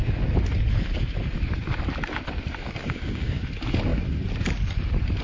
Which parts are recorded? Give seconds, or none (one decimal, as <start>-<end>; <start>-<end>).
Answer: 0.0-2.8; 3.4-5.2